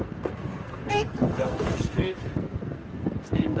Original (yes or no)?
no